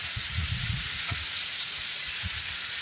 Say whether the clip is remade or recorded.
remade